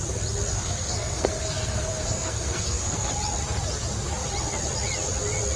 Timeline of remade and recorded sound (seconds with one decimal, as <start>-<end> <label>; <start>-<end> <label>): 0.0-0.5 recorded; 0.5-3.1 remade; 3.1-5.6 recorded